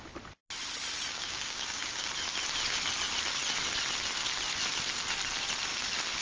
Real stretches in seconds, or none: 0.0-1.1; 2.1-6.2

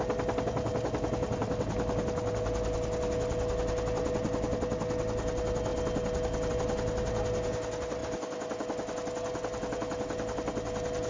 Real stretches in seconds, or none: 0.0-11.1

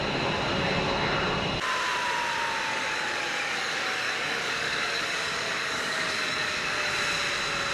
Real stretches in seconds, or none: 0.0-2.7; 6.9-7.7

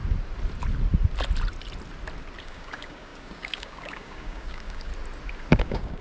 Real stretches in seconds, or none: 0.0-2.4; 4.9-5.6